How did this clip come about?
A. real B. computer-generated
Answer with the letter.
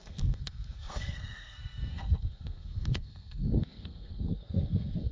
B